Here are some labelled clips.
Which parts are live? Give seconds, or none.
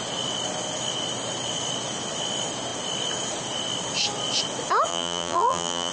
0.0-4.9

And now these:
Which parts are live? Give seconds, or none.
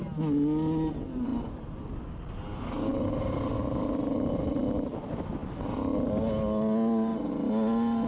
0.0-8.1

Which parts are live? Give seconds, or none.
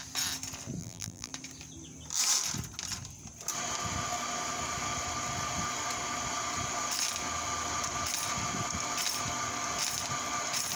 0.0-0.8; 1.3-10.8